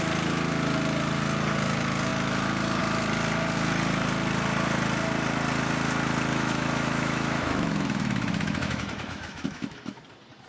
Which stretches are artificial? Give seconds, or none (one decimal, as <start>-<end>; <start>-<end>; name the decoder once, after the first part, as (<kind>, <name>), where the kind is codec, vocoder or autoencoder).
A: 6.3-10.0 (autoencoder, DAC-VAE)